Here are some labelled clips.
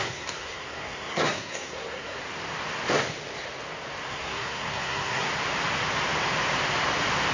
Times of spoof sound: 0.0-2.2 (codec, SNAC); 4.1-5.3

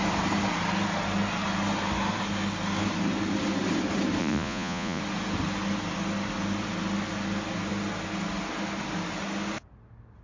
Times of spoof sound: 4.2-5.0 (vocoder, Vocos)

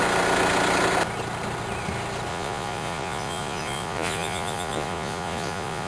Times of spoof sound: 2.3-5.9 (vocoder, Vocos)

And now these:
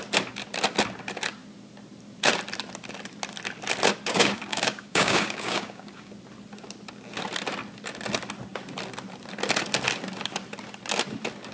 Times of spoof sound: 4.1-6.1 (codec, DAC)